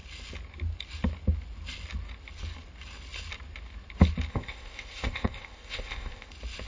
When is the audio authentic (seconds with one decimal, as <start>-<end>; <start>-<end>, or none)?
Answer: 0.0-4.3; 6.3-6.7